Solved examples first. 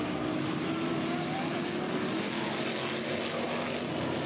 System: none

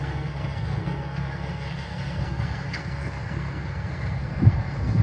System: codec, SNAC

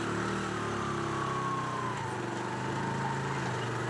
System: none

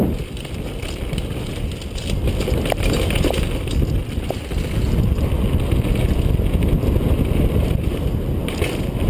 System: none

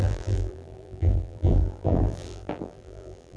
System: vocoder, BigVGAN v2